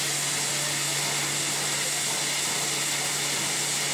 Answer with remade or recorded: recorded